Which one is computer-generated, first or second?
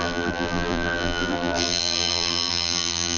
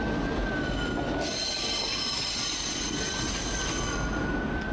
first